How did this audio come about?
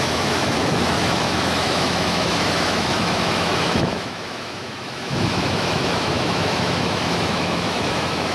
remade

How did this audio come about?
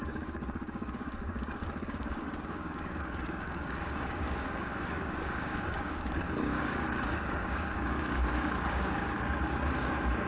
remade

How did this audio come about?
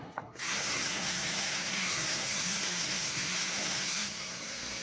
remade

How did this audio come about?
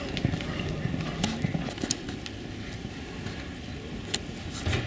recorded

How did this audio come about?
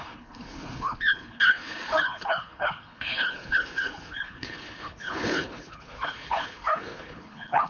remade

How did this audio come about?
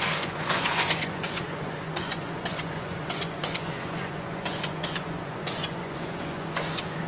remade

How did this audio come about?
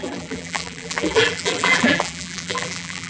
remade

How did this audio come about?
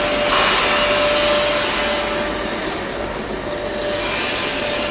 recorded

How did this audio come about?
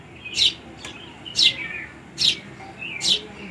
recorded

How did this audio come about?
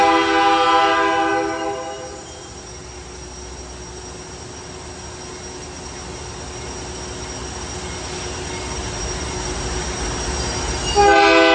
recorded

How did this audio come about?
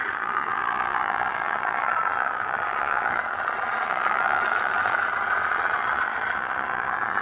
remade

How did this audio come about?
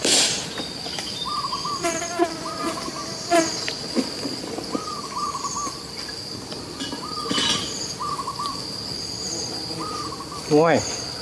remade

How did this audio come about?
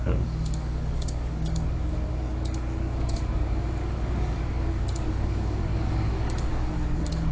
remade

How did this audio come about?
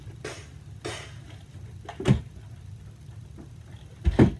recorded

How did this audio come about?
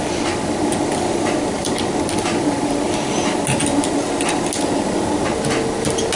recorded